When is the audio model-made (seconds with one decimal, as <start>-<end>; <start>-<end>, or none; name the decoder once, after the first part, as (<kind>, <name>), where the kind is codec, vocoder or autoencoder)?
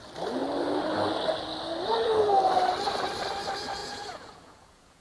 3.8-5.0 (vocoder, Vocos)